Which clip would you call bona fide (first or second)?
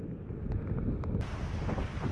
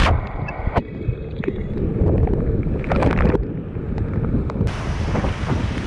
first